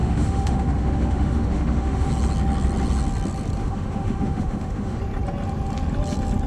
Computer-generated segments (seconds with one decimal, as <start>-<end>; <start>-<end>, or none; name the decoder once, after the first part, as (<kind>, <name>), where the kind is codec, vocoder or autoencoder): 0.0-2.1 (autoencoder, DAC-VAE); 3.6-5.0